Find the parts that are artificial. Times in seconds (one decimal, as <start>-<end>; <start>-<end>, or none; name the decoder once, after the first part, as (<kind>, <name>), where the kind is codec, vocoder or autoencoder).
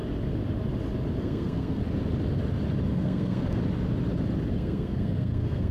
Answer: 1.2-1.8 (codec, SNAC); 2.9-3.6; 4.5-5.7